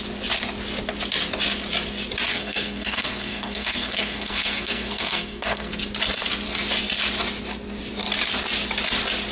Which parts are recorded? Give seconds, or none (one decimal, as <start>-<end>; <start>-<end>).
0.0-2.3; 5.7-9.3